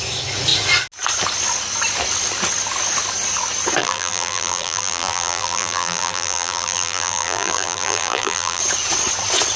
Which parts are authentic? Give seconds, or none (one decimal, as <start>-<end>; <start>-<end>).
0.0-3.8; 8.6-9.6